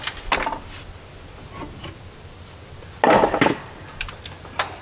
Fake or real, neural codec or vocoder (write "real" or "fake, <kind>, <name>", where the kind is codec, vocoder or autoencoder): real